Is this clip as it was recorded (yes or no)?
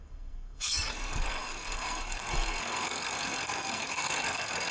no